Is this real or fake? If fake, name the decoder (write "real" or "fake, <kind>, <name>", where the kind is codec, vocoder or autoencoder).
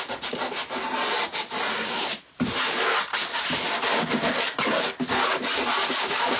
real